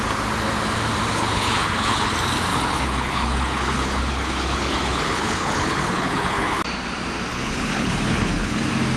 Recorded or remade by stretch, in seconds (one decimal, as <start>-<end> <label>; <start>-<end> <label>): 0.0-1.1 recorded; 1.1-2.1 remade; 2.1-2.5 recorded; 2.5-6.6 remade; 6.6-7.3 recorded; 7.3-8.6 remade; 8.6-9.0 recorded